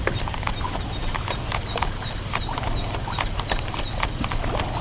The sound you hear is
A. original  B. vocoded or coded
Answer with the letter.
A